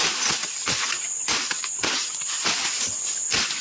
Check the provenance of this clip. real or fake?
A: real